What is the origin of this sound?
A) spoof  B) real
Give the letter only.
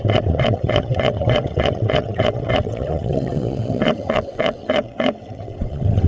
A